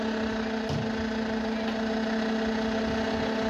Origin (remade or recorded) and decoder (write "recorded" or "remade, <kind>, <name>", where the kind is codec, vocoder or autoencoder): recorded